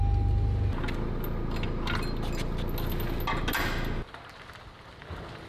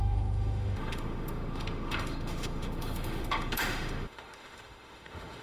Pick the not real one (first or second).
second